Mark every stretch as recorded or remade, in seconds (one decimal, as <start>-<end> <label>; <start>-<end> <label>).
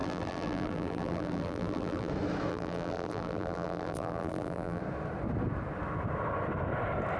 0.0-2.1 remade; 2.1-2.5 recorded; 2.5-4.8 remade; 4.8-7.2 recorded